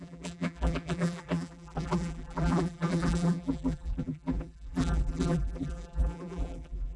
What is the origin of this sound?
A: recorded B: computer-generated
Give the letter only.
B